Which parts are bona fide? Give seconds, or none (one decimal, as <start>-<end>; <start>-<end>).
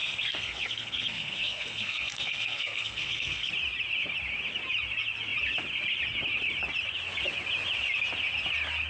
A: 3.5-8.9